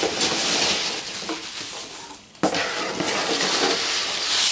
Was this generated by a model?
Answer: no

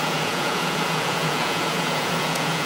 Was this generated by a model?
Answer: yes